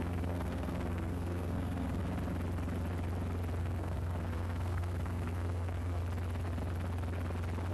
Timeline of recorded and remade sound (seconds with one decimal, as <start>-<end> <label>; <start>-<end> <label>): 0.0-2.0 remade; 2.0-3.6 recorded; 3.6-6.0 remade; 6.0-7.7 recorded